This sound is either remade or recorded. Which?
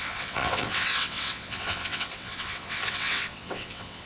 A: remade